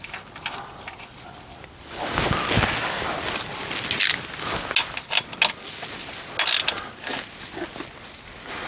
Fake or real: real